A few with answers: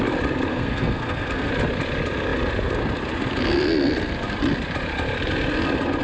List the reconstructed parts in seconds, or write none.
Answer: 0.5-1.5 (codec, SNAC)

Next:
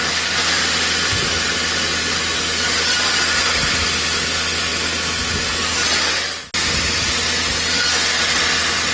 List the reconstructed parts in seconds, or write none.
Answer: none

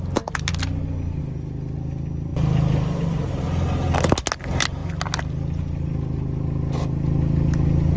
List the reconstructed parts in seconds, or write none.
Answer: none